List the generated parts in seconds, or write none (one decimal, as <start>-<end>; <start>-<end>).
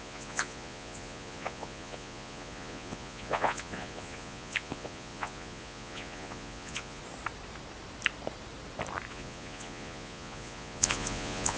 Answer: 0.0-7.0; 9.1-11.6